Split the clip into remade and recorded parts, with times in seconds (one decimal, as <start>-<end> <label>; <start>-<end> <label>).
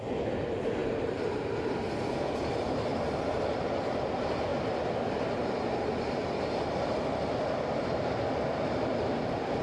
0.0-9.6 recorded